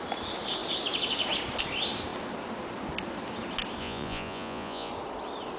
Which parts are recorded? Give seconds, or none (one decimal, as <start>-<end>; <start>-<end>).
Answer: 0.0-3.8; 4.9-5.6